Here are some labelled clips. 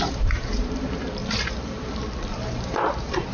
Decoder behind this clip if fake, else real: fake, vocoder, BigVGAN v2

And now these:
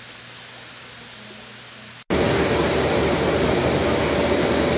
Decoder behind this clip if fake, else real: real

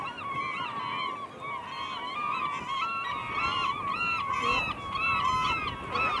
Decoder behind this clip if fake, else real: real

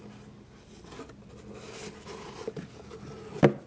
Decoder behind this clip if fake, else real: real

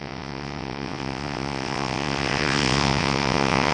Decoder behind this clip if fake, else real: fake, vocoder, WaveNeXt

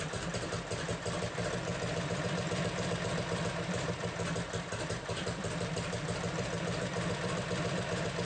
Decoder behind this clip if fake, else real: fake, vocoder, BigVGAN v2